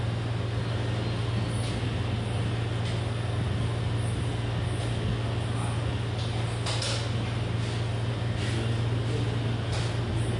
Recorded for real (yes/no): yes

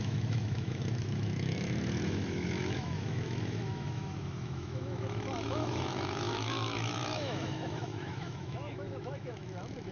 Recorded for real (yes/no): no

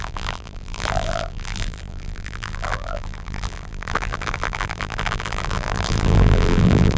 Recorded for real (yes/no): no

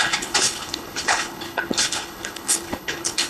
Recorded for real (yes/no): no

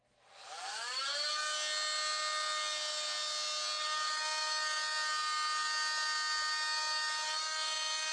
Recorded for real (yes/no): yes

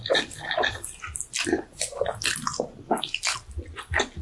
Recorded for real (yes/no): yes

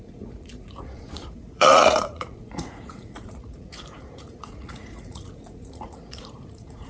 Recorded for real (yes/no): no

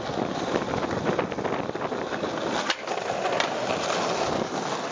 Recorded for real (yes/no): yes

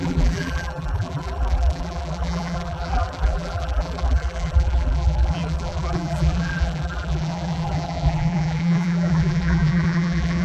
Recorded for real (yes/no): no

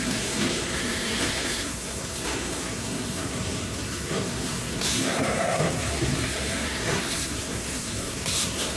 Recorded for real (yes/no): no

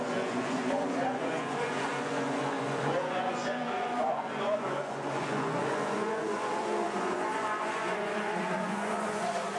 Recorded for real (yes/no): no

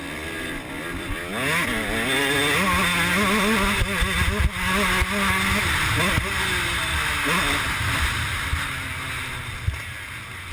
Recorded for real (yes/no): yes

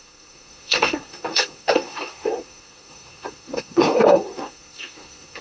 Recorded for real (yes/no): no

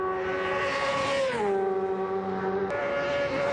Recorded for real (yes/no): yes